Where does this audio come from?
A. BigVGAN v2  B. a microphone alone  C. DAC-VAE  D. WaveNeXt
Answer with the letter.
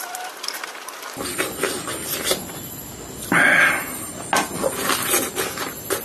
B